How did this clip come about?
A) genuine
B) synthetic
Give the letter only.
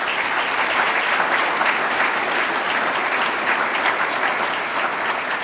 A